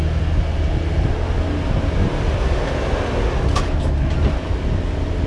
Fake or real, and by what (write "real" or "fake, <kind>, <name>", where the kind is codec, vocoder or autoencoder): real